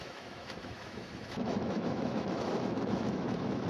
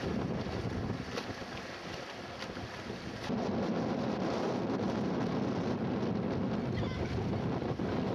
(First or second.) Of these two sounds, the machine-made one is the first